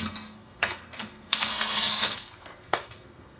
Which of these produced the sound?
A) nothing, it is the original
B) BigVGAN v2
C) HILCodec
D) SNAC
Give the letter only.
D